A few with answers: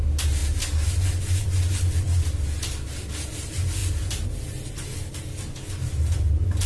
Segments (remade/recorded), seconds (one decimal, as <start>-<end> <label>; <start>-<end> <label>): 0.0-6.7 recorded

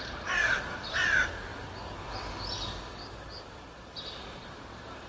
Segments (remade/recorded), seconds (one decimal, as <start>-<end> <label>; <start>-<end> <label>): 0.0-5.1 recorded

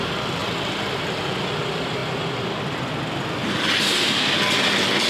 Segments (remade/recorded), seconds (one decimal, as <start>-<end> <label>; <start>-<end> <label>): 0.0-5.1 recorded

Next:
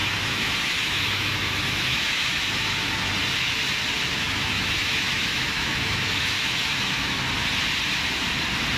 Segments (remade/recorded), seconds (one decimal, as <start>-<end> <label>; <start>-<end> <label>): 0.0-3.1 remade; 3.1-4.1 recorded; 4.1-7.2 remade; 7.2-8.8 recorded